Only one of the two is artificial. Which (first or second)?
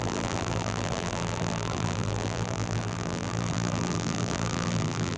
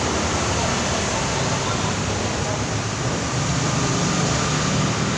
first